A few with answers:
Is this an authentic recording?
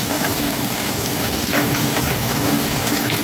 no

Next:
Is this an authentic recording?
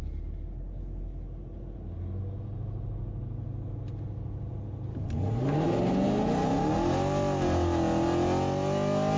yes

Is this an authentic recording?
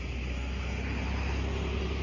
yes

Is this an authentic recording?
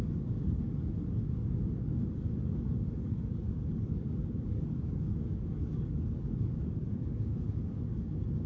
no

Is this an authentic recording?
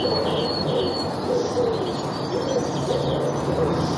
yes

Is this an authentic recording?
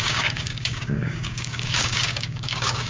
no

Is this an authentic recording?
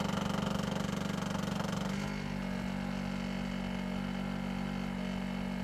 yes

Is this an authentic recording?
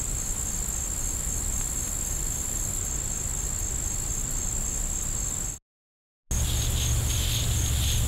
yes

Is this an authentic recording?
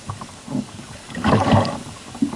no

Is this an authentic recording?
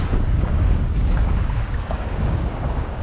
no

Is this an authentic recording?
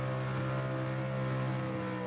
yes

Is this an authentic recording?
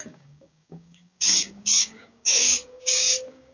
no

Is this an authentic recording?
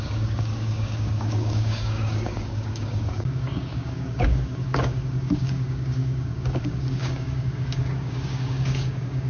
no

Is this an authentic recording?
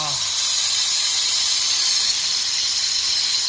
yes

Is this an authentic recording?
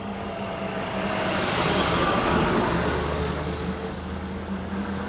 no